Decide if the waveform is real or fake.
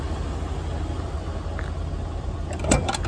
real